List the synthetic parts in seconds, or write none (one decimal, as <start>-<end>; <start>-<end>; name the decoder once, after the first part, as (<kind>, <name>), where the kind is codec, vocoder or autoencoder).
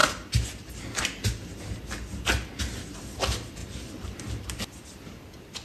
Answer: none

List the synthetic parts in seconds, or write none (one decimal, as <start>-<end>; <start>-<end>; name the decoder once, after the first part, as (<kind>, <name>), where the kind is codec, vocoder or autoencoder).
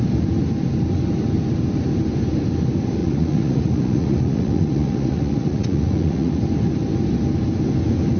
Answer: 3.0-6.4 (vocoder, Vocos)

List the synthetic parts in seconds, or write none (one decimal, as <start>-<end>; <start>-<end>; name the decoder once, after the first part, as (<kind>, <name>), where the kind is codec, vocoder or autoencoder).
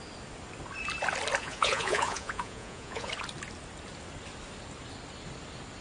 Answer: 1.4-3.1 (vocoder, Vocos)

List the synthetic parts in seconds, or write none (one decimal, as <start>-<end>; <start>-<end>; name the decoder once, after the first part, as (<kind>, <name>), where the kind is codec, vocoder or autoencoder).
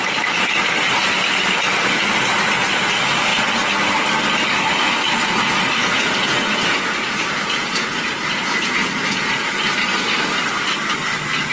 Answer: 5.8-9.5 (vocoder, Vocos)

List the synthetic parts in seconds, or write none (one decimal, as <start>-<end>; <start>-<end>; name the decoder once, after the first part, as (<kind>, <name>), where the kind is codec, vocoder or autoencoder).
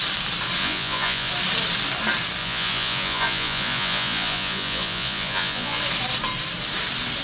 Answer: 0.6-1.3 (vocoder, Vocos); 2.4-5.8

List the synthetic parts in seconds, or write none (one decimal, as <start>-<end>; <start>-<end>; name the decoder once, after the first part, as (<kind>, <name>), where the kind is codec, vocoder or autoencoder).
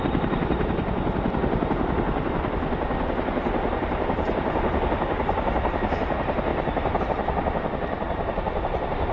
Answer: none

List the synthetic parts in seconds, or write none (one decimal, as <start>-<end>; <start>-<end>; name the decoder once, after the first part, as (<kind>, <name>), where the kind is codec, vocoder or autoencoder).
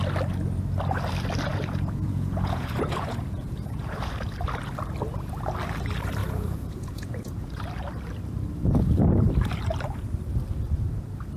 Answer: 1.5-4.1 (vocoder, Vocos); 6.2-7.6